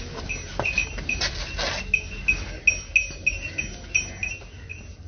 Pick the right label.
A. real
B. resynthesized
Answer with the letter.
A